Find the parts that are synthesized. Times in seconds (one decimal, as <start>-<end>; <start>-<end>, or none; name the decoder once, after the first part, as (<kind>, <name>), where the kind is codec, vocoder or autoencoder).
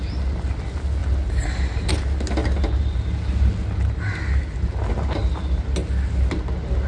none